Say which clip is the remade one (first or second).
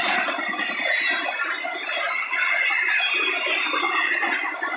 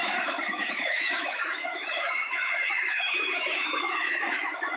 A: second